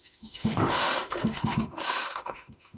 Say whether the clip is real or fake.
fake